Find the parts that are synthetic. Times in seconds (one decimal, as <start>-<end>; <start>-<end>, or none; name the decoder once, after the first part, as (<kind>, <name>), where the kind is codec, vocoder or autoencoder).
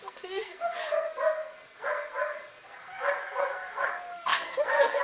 0.0-5.0 (codec, SNAC)